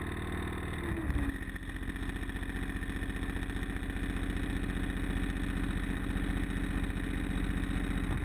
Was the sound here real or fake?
real